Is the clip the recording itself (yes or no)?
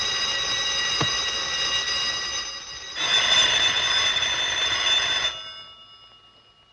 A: yes